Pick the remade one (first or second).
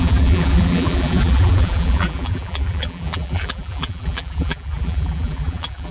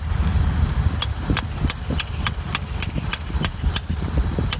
first